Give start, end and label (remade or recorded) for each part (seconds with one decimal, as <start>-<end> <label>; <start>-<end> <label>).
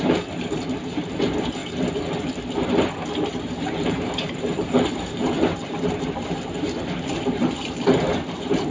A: 0.0-1.6 remade; 1.6-3.1 recorded; 3.1-8.7 remade